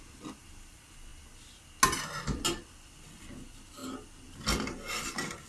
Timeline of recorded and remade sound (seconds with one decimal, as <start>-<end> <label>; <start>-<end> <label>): 0.0-5.5 recorded